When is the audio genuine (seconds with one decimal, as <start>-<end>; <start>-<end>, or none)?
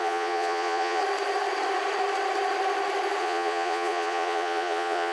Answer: 1.0-3.2